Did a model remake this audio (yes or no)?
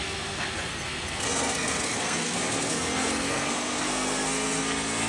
yes